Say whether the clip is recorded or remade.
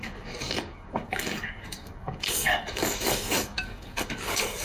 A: remade